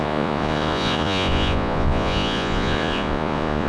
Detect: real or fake fake